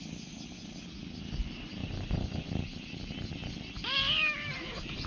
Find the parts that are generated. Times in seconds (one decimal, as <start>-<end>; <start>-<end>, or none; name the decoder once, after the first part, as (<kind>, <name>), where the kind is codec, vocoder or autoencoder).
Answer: 1.8-2.5 (vocoder, Vocos)